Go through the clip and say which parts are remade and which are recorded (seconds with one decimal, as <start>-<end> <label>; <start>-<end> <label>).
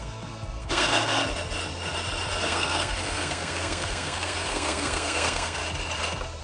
0.0-1.2 remade; 1.2-2.4 recorded; 2.4-5.6 remade; 5.6-6.4 recorded